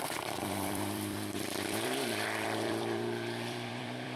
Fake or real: fake